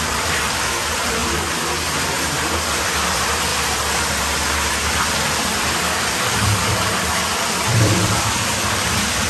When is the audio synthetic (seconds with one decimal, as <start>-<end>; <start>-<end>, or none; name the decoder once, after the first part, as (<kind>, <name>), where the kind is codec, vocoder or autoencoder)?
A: 0.0-1.2 (vocoder, BigVGAN v2); 2.8-3.5; 4.1-9.3